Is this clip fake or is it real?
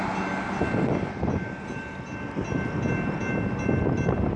real